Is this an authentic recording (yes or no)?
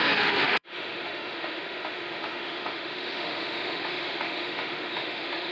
no